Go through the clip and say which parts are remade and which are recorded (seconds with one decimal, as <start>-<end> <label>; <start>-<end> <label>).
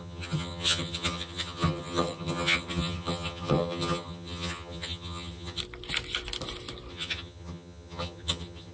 0.0-5.6 remade; 5.6-6.9 recorded; 6.9-8.7 remade